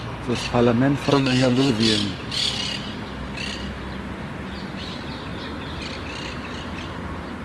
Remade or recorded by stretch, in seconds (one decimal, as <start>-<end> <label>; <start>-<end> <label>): 0.0-1.1 recorded; 1.1-1.7 remade; 1.7-7.4 recorded